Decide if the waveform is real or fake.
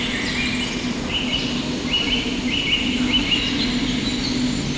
real